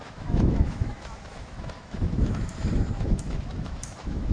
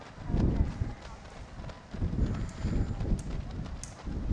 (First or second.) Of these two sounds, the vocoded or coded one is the first